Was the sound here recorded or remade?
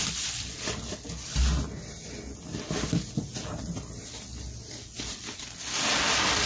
recorded